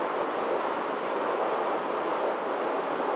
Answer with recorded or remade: recorded